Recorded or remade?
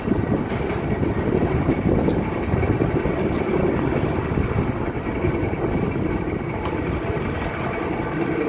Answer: recorded